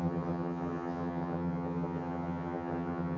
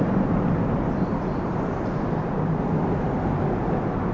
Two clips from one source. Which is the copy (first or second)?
first